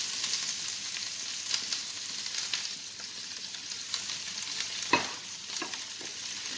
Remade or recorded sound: recorded